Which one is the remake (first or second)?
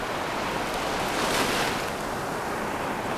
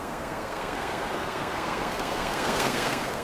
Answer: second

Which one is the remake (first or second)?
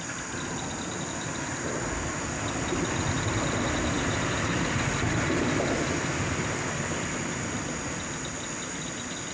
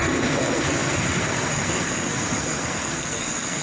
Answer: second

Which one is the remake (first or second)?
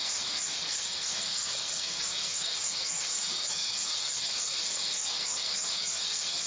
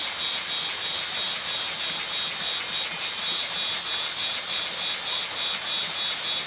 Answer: first